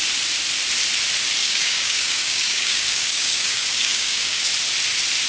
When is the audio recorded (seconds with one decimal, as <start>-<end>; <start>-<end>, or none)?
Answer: 0.0-1.4; 4.5-5.3